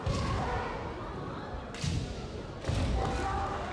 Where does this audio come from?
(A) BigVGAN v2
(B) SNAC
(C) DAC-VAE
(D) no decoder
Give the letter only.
D